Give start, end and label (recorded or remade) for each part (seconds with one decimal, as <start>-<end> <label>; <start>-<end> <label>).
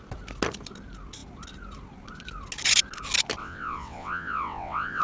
0.0-3.4 recorded; 3.4-5.0 remade